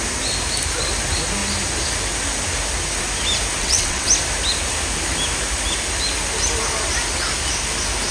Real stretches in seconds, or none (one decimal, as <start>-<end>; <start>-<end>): 0.0-3.6; 4.1-8.1